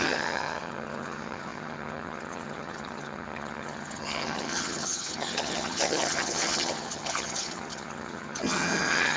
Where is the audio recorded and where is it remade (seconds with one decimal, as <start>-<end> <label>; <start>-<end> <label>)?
0.0-9.2 remade